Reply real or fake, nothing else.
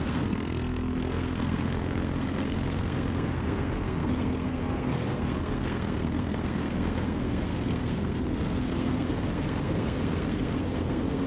fake